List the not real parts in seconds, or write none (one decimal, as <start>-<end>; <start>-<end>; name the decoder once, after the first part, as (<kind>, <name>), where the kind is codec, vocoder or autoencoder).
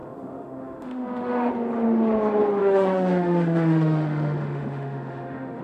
0.0-1.5 (autoencoder, DAC-VAE); 2.6-5.6